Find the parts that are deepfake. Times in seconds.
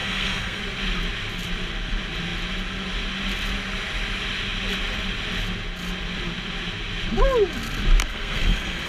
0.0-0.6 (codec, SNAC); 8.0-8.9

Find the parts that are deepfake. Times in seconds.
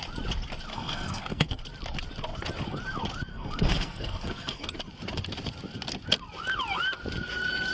0.7-1.6 (codec, SNAC); 3.3-4.7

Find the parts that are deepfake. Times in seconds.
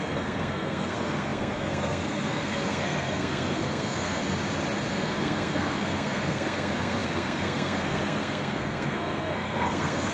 0.0-4.2 (codec, SNAC); 4.9-10.1